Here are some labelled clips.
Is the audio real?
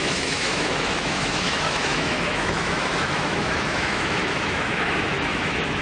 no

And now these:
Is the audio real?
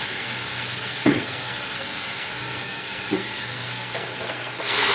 no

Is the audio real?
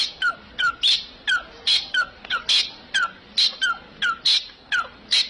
yes